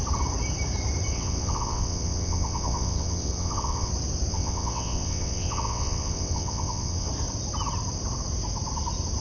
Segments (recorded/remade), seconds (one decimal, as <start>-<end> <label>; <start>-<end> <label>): 0.0-1.1 recorded; 1.1-3.9 remade; 3.9-4.3 recorded; 4.3-7.1 remade; 7.1-9.2 recorded